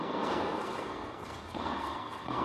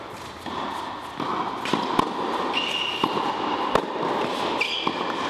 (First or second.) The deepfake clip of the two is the first